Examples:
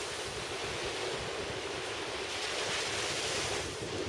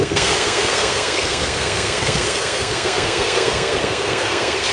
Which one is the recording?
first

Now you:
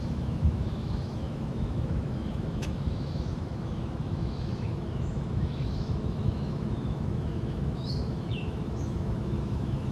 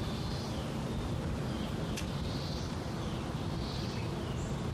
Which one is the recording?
second